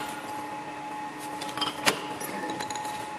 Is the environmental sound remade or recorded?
recorded